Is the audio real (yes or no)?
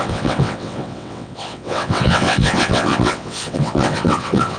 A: no